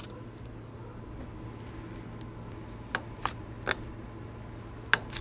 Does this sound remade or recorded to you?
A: recorded